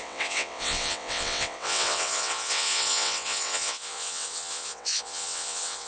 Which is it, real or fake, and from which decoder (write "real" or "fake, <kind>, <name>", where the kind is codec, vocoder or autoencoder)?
fake, vocoder, WaveNeXt